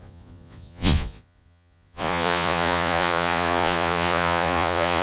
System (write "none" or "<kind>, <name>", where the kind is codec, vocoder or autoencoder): vocoder, Vocos